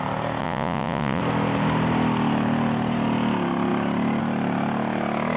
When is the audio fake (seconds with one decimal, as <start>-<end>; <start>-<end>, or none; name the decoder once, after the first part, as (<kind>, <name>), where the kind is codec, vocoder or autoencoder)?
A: 0.4-1.2 (vocoder, Vocos)